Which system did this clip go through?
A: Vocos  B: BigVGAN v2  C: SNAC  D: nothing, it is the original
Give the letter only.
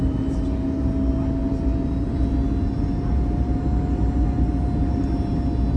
D